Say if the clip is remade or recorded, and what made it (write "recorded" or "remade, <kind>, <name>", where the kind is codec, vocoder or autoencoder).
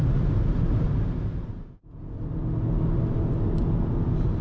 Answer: recorded